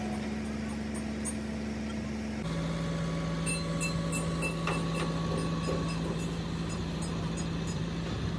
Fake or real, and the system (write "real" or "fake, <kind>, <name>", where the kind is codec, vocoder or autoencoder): real